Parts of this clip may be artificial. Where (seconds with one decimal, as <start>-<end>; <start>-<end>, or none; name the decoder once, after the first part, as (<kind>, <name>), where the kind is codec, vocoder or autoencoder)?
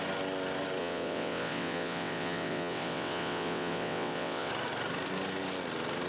0.8-4.5 (vocoder, WaveNeXt)